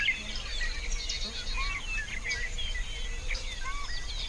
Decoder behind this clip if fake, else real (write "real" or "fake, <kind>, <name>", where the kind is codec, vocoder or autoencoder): real